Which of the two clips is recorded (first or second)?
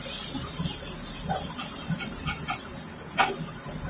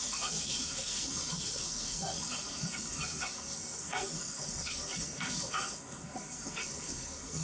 first